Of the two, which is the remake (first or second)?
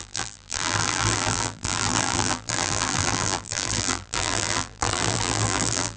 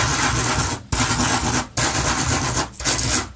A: first